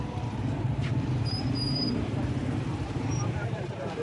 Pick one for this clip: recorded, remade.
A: remade